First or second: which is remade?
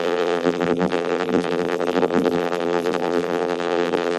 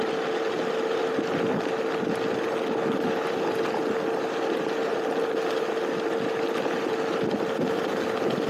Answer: first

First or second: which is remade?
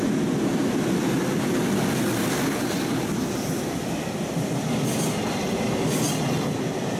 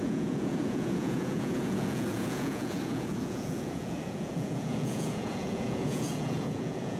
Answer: second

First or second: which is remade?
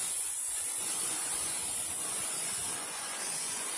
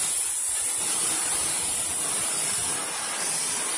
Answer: first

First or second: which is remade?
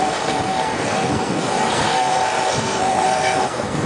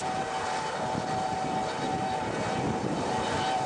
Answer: first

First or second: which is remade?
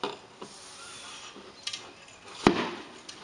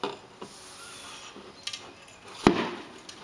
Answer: first